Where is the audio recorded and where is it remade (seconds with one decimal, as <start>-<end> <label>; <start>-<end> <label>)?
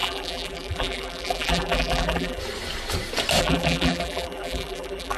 0.0-2.4 remade; 2.4-3.4 recorded; 3.4-5.2 remade